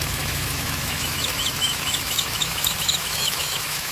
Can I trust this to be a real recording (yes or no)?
no